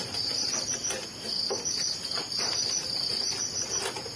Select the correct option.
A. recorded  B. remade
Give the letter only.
A